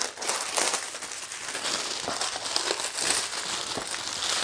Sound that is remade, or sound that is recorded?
recorded